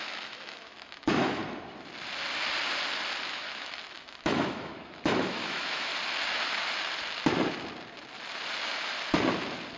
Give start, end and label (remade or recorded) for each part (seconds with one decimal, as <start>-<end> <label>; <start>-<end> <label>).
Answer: 0.0-1.4 remade; 1.4-3.3 recorded; 3.3-5.9 remade; 5.9-9.8 recorded